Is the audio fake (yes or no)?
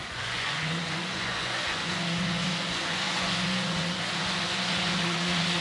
yes